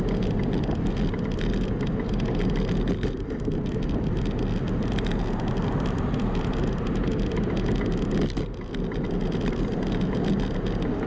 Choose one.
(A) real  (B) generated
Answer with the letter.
A